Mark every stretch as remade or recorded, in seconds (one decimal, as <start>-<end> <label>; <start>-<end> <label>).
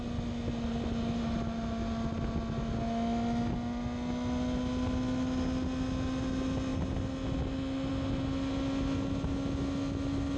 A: 0.0-10.4 recorded